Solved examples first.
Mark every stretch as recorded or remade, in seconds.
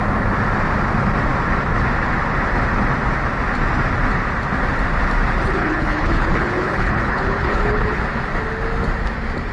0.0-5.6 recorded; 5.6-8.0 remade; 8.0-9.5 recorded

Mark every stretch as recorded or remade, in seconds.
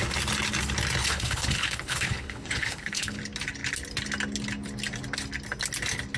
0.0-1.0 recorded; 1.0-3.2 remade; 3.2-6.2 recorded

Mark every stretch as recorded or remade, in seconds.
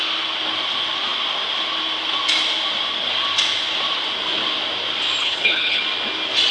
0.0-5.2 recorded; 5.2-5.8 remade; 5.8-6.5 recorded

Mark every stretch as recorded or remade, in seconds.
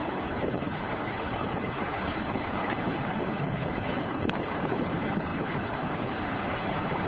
0.0-7.1 remade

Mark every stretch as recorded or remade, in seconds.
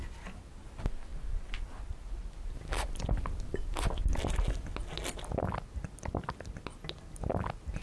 0.0-7.8 recorded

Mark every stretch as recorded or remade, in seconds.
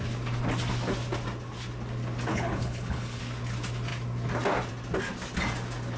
0.0-2.3 recorded; 2.3-3.2 remade; 3.2-6.0 recorded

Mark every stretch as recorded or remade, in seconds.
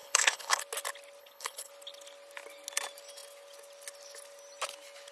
0.0-0.6 remade; 0.6-1.2 recorded; 1.2-1.7 remade; 1.7-5.1 recorded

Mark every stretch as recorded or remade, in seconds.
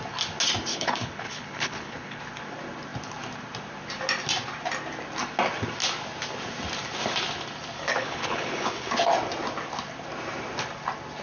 0.0-0.7 recorded; 0.7-2.2 remade; 2.2-7.8 recorded; 7.8-8.9 remade; 8.9-11.2 recorded